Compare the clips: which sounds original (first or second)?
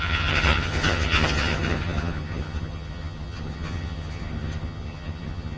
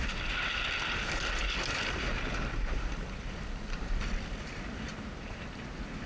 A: second